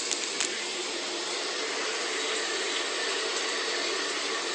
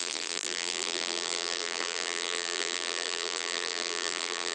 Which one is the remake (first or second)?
second